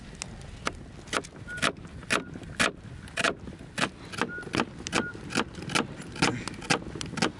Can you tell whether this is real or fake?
real